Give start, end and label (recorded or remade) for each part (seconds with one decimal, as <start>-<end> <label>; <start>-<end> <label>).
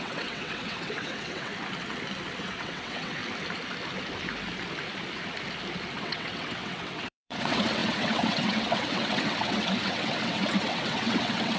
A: 0.0-1.5 remade; 1.5-2.4 recorded; 2.4-3.2 remade; 3.2-6.0 recorded; 6.0-11.6 remade